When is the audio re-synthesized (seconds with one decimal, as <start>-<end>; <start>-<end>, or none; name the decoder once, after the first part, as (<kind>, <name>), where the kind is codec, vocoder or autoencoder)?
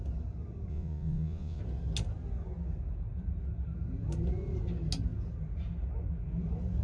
0.7-1.6 (vocoder, Vocos)